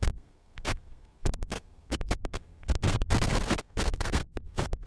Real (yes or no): no